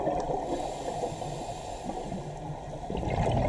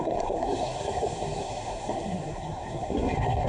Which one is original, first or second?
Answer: first